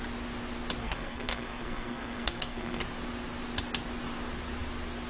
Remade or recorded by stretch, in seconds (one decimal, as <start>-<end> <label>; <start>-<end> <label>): 0.0-0.8 recorded; 0.8-2.8 remade; 2.8-5.1 recorded